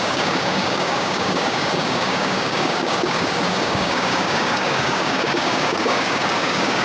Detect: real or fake fake